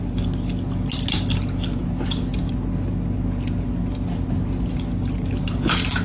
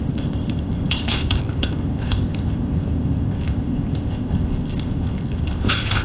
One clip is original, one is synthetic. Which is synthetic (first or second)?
second